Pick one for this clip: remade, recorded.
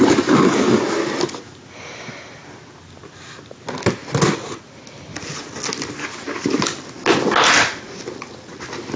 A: recorded